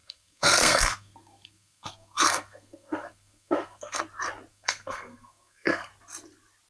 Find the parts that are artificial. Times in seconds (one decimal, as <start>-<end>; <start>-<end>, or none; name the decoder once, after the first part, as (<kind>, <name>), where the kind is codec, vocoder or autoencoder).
0.0-4.0 (codec, SNAC); 4.5-5.9